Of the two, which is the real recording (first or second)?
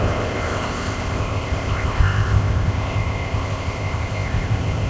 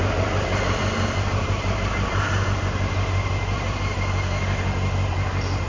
second